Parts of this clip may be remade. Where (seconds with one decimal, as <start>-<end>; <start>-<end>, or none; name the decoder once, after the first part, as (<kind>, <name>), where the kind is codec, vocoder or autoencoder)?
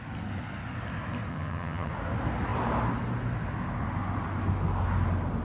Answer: 1.3-1.9 (vocoder, HiFi-GAN)